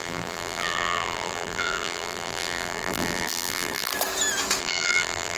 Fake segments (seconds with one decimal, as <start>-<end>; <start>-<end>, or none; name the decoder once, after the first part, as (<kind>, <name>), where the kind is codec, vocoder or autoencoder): 0.0-3.9 (vocoder, BigVGAN v2); 4.6-5.4